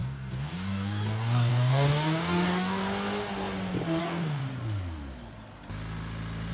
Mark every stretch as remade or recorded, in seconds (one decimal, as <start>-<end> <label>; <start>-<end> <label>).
0.0-2.8 remade; 2.8-4.0 recorded; 4.0-4.4 remade; 4.4-6.5 recorded